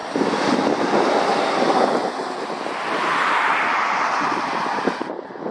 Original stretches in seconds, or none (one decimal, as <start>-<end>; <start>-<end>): 3.3-4.1; 4.6-5.5

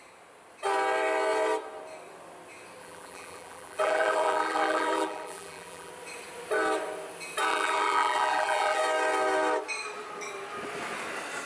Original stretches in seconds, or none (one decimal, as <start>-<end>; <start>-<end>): 0.0-2.8; 5.9-7.5; 8.8-11.5

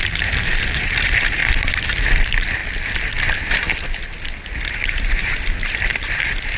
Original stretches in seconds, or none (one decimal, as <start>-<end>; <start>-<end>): 1.4-2.0; 2.6-4.7

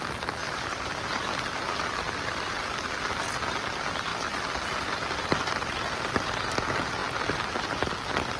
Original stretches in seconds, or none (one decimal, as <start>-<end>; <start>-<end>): 0.0-0.4; 3.6-4.1; 6.1-8.4